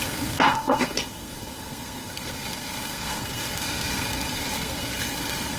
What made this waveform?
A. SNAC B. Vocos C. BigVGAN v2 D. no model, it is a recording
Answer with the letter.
A